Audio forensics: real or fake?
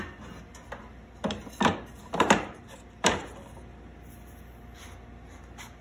real